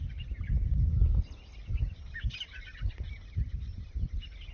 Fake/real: real